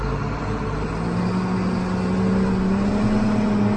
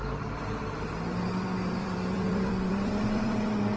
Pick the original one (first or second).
first